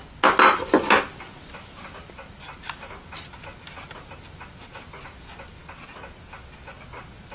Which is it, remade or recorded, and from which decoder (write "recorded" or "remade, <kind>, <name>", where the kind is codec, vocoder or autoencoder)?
recorded